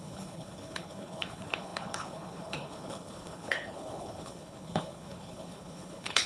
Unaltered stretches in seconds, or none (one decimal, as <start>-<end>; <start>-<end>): none